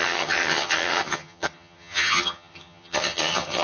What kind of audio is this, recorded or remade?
remade